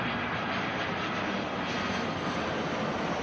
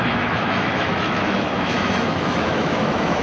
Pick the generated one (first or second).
second